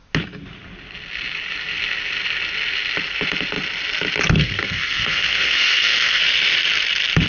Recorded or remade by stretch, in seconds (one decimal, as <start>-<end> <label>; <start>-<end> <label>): 0.0-4.4 recorded; 4.4-6.2 remade; 6.2-7.3 recorded